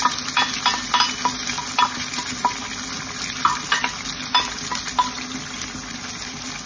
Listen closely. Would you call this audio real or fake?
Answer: real